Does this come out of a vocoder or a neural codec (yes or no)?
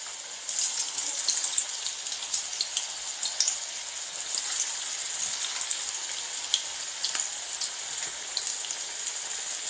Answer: no